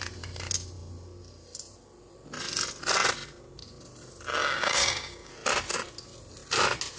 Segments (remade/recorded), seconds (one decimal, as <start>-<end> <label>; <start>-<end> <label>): 0.0-4.4 recorded; 4.4-5.3 remade; 5.3-7.0 recorded